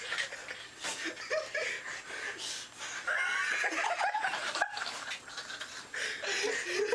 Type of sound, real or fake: real